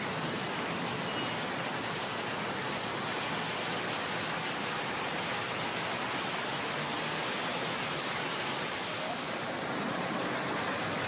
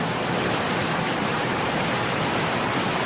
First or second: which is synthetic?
second